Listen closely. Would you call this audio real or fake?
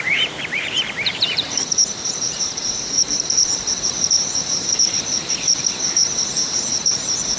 fake